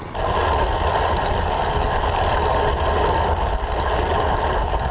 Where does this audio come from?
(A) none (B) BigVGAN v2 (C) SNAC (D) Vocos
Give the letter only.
A